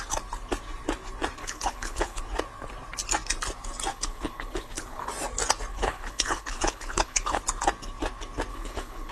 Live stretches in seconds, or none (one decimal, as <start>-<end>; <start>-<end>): 0.0-1.4; 2.2-3.9; 5.1-5.7; 7.4-8.5